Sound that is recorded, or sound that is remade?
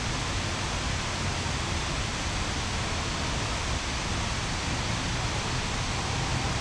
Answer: recorded